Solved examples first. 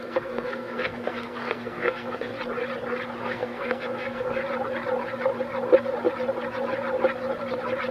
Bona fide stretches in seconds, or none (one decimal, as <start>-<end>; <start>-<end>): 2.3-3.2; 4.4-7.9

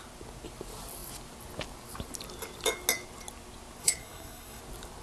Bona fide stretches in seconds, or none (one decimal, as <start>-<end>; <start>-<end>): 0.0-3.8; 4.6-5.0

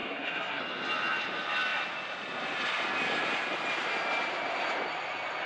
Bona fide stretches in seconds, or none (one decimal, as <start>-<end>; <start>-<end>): 0.6-5.5

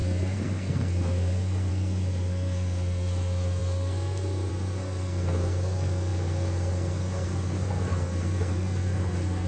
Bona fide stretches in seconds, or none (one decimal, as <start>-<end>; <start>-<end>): none